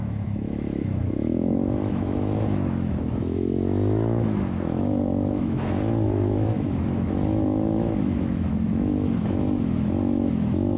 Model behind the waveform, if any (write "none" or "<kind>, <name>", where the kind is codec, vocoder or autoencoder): autoencoder, DAC-VAE